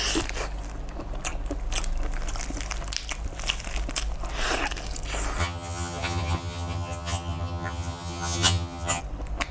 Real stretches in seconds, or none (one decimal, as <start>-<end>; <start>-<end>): 0.0-5.4; 9.0-9.5